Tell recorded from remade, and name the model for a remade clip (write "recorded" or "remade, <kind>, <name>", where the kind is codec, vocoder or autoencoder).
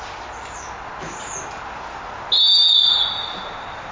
recorded